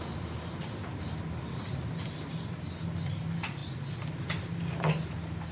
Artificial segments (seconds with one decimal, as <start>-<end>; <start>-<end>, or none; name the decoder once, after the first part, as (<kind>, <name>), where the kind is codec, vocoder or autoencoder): none